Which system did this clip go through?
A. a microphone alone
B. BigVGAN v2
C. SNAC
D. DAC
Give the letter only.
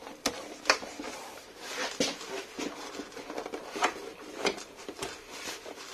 A